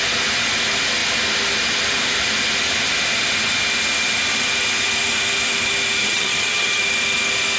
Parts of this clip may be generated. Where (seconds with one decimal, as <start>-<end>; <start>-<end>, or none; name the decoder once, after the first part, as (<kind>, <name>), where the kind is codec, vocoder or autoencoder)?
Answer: 6.0-6.8 (vocoder, HiFi-GAN)